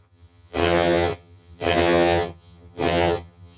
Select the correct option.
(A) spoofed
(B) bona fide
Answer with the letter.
A